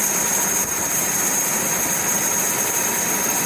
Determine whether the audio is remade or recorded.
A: recorded